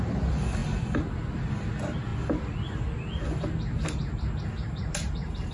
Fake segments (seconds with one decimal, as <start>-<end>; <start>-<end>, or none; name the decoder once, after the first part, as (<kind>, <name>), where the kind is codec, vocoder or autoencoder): none

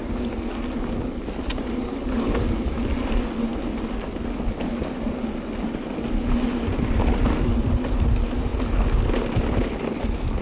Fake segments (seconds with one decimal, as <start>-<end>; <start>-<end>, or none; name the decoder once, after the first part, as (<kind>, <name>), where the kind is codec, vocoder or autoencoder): none